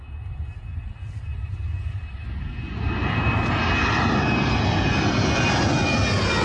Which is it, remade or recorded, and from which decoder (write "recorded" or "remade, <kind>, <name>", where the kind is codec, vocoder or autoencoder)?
recorded